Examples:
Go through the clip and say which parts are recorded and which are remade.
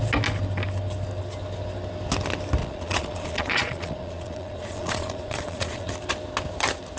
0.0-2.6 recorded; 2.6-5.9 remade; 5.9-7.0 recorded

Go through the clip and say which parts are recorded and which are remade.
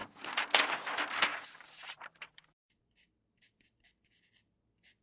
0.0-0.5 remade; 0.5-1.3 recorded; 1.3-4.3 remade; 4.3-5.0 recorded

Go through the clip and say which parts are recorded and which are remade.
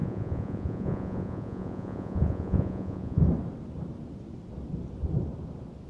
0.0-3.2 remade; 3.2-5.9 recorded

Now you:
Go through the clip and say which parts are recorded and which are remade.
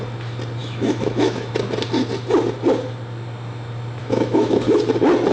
0.0-0.6 recorded; 0.6-1.5 remade; 1.5-4.0 recorded; 4.0-4.8 remade; 4.8-5.3 recorded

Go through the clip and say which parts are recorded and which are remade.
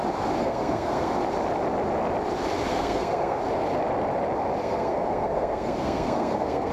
0.0-0.4 recorded; 0.4-1.2 remade; 1.2-2.7 recorded; 2.7-3.4 remade; 3.4-4.6 recorded; 4.6-6.7 remade